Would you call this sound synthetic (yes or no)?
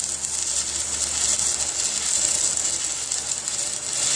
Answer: no